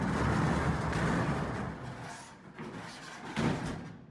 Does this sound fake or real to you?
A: real